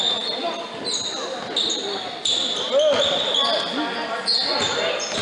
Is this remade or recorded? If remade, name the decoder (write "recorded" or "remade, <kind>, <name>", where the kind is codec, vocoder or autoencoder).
recorded